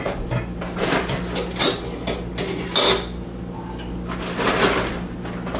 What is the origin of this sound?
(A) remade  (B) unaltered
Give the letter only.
B